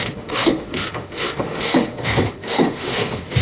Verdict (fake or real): fake